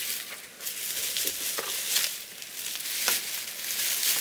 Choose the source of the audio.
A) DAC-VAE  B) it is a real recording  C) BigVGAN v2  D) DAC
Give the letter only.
B